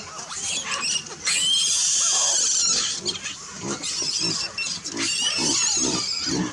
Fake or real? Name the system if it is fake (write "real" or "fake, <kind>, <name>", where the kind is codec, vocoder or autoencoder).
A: real